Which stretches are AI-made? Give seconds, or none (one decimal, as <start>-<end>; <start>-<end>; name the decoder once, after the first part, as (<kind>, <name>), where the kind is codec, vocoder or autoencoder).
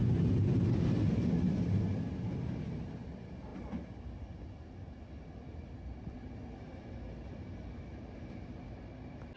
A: none